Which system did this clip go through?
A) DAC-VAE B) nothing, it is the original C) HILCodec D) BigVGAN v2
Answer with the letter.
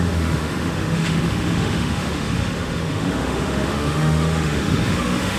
A